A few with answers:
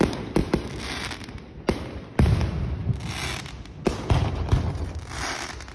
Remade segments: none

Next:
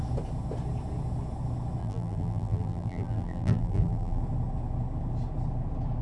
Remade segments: 1.8-4.2 (vocoder, BigVGAN v2)

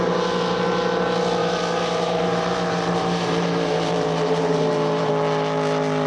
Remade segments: 1.4-5.1 (vocoder, BigVGAN v2)

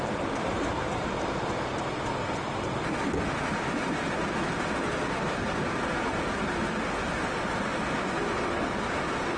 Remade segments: 0.0-5.4 (vocoder, BigVGAN v2); 8.6-9.4